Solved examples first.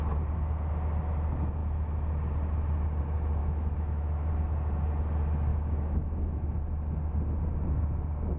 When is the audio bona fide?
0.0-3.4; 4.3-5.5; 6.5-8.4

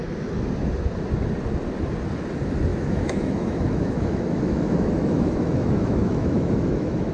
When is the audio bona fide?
0.0-2.7

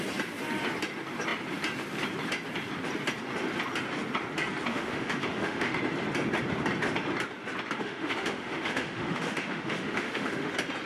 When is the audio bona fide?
0.0-4.7; 5.8-7.8; 10.5-10.9

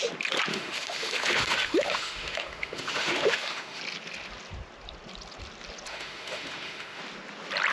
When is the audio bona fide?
0.0-0.5; 3.8-5.9; 7.0-7.7